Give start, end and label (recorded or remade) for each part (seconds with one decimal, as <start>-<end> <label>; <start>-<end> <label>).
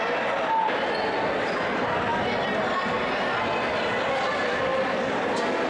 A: 0.0-2.1 recorded; 2.1-3.7 remade; 3.7-5.7 recorded